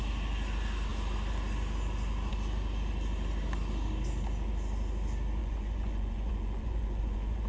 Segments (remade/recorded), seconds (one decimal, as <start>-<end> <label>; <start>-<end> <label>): 0.0-5.4 recorded; 5.4-7.5 remade